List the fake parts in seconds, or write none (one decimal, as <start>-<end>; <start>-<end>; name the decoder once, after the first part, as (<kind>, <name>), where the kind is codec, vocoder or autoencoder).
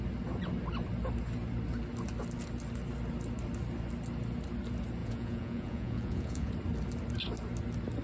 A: 5.0-6.5 (vocoder, Vocos)